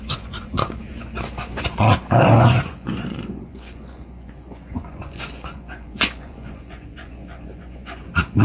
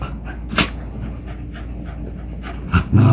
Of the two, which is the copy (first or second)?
first